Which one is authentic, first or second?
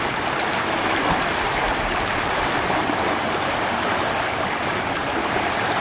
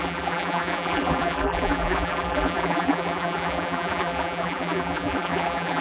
first